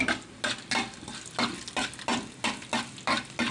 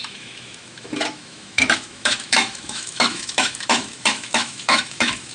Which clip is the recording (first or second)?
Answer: first